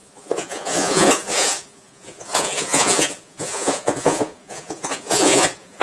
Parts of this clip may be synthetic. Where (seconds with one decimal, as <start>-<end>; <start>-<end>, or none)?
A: 0.0-5.8